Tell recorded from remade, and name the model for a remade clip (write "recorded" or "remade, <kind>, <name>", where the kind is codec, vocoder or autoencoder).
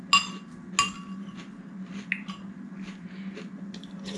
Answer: recorded